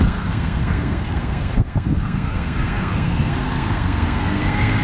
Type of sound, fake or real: fake